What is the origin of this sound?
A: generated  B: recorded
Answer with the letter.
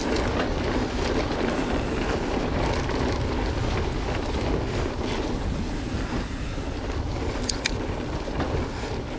B